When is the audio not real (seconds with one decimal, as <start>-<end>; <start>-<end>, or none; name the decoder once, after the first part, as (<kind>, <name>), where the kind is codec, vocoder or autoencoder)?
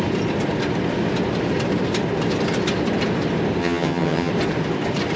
3.6-4.3 (vocoder, HiFi-GAN)